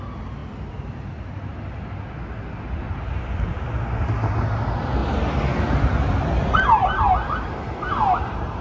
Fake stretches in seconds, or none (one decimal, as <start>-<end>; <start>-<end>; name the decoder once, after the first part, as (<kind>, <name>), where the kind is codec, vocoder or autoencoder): none